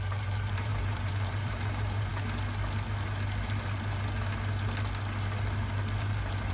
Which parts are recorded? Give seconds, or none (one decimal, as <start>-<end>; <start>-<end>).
2.1-6.0